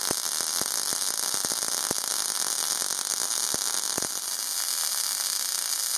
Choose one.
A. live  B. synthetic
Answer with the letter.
A